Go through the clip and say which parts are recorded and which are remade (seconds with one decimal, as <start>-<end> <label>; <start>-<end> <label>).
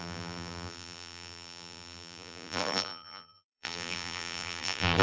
0.0-5.0 remade